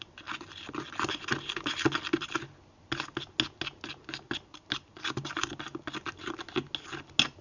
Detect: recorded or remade recorded